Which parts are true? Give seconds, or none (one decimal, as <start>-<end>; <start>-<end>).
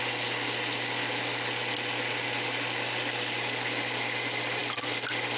0.0-5.4